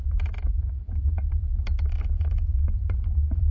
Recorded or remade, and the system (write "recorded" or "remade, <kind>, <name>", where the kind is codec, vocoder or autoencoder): remade, vocoder, BigVGAN v2